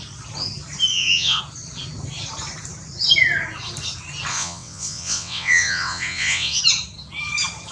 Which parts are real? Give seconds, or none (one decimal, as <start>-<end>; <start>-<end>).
0.0-0.9; 1.4-4.3; 6.6-7.7